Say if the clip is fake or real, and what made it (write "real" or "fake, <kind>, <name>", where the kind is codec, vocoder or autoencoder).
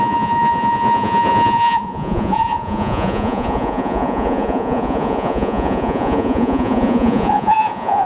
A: fake, vocoder, Vocos